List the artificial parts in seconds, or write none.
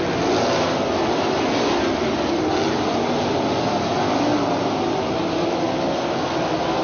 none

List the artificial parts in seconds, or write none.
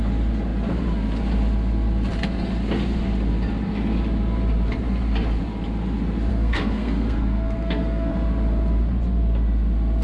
6.3-8.1 (codec, SNAC)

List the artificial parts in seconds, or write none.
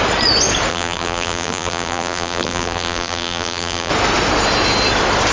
0.7-3.9 (vocoder, BigVGAN v2)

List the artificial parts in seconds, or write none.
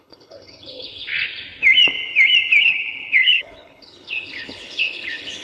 0.0-1.1 (codec, HILCodec); 2.6-5.4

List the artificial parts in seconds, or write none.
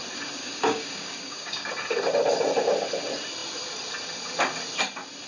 0.4-1.7 (codec, DAC)